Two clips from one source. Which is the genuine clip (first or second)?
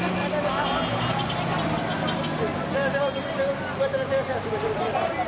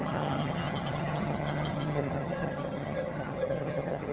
first